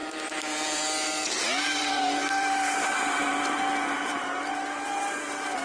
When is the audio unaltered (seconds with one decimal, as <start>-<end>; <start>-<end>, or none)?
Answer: 3.3-4.0